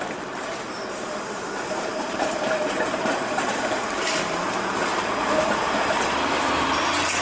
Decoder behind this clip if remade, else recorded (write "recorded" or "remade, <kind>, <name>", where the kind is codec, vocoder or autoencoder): remade, vocoder, BigVGAN v2